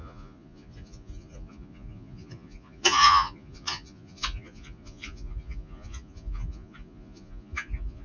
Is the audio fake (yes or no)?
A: yes